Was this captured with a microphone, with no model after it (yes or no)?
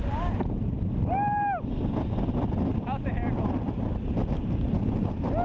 yes